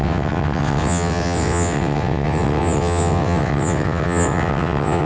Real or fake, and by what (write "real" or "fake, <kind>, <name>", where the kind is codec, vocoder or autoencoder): fake, vocoder, WaveNeXt